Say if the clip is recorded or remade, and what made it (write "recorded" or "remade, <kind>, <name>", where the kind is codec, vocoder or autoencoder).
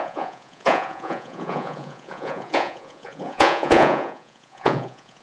remade, vocoder, Vocos